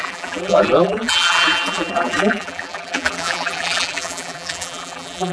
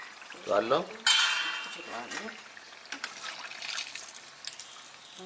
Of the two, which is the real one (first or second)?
second